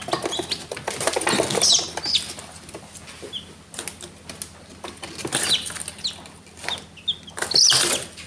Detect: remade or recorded recorded